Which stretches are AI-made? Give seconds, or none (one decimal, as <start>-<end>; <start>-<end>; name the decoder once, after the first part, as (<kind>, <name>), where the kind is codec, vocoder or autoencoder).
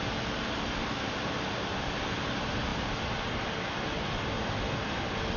none